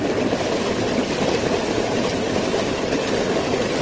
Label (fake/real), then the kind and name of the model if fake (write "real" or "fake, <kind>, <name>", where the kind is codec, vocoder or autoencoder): real